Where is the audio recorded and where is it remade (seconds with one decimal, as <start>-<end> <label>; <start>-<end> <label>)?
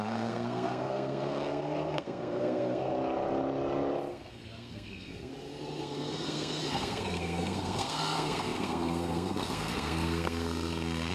0.0-2.9 remade; 2.9-4.1 recorded; 4.1-5.3 remade; 5.3-5.8 recorded; 5.8-11.1 remade